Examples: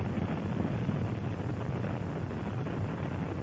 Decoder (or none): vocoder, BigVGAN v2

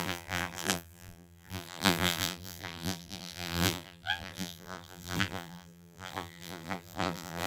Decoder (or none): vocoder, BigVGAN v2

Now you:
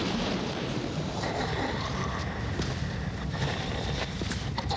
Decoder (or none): vocoder, BigVGAN v2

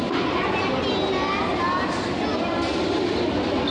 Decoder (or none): none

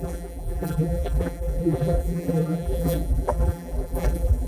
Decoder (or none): vocoder, BigVGAN v2